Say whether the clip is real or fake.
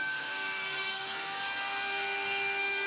fake